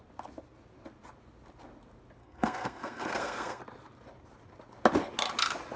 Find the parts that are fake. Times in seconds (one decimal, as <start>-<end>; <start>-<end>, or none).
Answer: 2.2-3.6